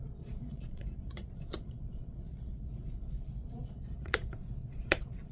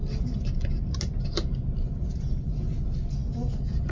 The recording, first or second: second